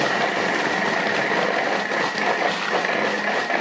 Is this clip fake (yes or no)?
no